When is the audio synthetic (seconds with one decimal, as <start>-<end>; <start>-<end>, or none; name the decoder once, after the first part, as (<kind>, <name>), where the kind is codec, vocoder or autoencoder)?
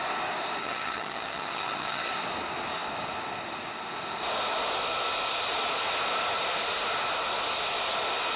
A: 0.6-2.1 (vocoder, HiFi-GAN)